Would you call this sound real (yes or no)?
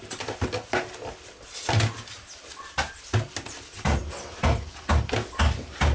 yes